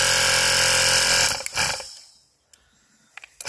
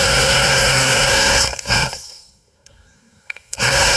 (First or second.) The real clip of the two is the first